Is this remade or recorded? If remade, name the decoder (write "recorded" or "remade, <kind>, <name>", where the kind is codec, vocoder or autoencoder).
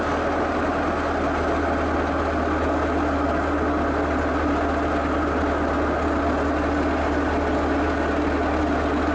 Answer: recorded